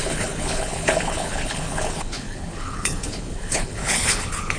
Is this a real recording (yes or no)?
no